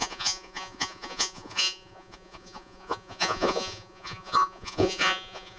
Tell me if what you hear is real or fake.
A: fake